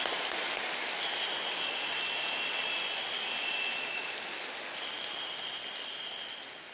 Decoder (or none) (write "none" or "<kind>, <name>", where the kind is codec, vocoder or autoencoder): none